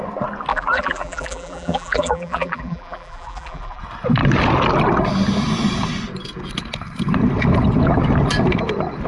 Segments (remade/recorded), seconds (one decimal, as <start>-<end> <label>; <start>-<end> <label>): 0.0-0.5 recorded; 0.5-3.8 remade; 3.8-9.1 recorded